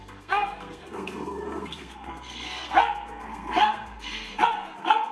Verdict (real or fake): fake